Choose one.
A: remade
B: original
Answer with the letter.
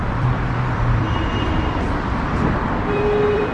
A